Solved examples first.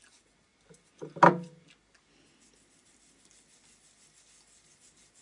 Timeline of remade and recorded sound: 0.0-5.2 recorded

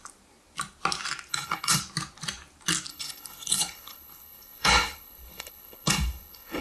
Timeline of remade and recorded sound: 0.0-1.3 recorded; 1.3-1.8 remade; 1.8-2.9 recorded; 2.9-6.6 remade

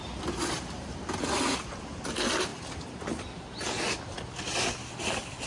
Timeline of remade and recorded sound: 0.0-5.5 recorded